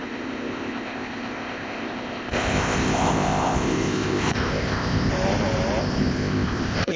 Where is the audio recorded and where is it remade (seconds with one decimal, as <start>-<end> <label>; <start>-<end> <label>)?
0.0-5.1 remade; 5.1-5.8 recorded; 5.8-7.0 remade